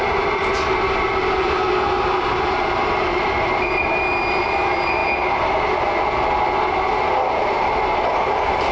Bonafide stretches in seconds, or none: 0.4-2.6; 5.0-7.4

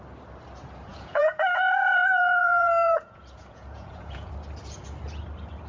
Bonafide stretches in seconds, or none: 0.0-0.9; 4.3-5.7

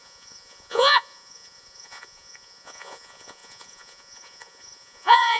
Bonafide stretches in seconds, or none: none

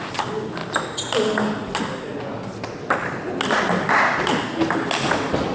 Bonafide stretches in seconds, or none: 0.0-5.5

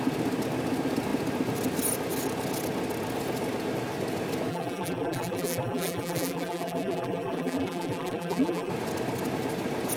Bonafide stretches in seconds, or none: 0.0-4.5; 8.7-10.0

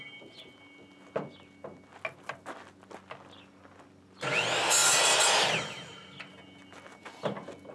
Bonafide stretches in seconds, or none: 0.0-7.7